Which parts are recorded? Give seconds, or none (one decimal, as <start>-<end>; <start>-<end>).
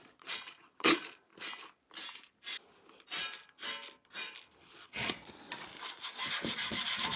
1.3-4.6; 5.7-6.3